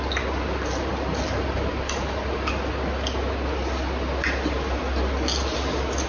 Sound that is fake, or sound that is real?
real